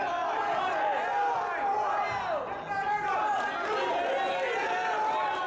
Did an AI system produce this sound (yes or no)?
no